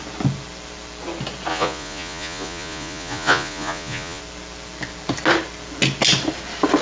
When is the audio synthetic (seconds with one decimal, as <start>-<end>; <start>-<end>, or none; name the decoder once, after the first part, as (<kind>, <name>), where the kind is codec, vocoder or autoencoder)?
1.5-4.2 (vocoder, Vocos)